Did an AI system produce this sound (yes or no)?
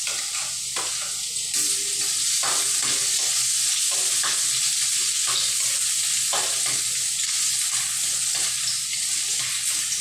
no